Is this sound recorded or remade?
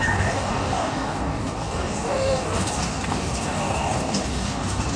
remade